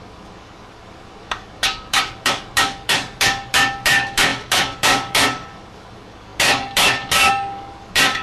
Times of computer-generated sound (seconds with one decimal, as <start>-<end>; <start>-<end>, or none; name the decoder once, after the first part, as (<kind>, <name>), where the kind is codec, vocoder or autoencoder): 0.0-8.2 (codec, DAC)